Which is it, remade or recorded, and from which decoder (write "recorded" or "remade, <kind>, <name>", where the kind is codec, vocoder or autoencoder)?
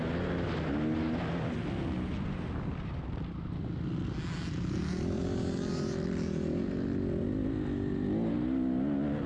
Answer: recorded